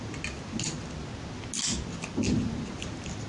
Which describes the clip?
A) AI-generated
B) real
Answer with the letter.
B